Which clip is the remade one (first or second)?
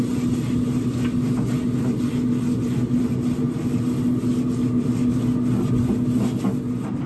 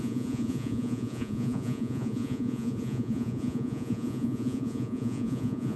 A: second